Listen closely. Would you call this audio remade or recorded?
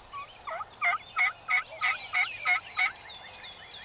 recorded